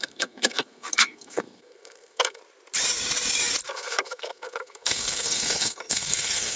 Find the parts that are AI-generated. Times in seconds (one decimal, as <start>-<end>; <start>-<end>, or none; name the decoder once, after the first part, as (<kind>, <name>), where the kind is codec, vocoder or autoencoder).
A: 0.0-2.4 (codec, SNAC); 3.7-6.6